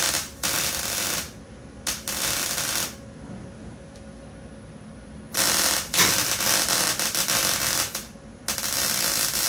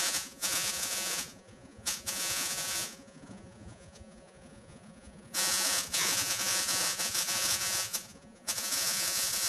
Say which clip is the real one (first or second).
first